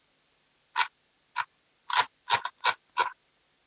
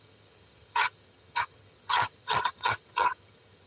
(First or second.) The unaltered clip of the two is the first